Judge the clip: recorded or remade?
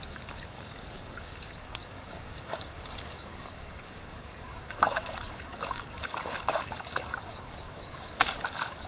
remade